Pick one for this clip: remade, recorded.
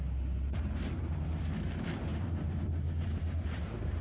remade